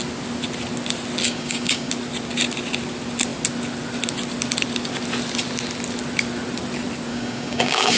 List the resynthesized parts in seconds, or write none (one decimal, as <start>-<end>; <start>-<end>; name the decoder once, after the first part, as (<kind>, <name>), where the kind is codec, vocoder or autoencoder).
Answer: 1.2-1.9 (codec, DAC); 7.1-8.0